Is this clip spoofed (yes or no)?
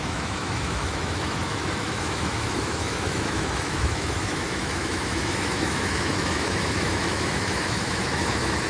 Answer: yes